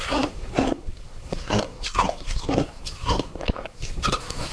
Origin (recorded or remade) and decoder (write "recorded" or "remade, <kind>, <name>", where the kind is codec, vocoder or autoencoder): remade, codec, SNAC